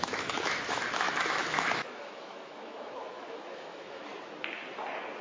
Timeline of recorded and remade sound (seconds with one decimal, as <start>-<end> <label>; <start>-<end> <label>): 0.0-4.1 remade; 4.1-5.2 recorded